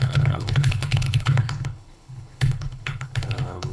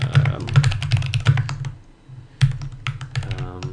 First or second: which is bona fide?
second